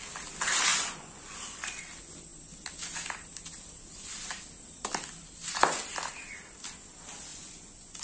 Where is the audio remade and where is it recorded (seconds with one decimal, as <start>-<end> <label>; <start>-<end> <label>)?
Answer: 0.0-0.7 recorded; 0.7-1.8 remade; 1.8-7.3 recorded; 7.3-8.0 remade